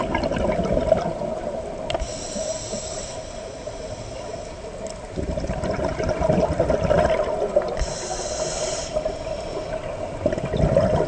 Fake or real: real